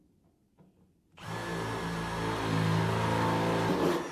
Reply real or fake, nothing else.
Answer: real